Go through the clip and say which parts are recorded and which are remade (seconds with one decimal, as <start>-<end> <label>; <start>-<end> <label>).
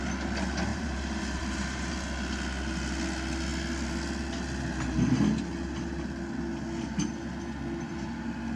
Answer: 0.0-0.7 recorded; 0.7-1.9 remade; 1.9-8.6 recorded